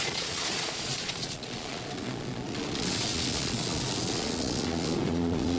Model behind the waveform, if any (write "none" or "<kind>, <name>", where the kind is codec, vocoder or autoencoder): vocoder, Vocos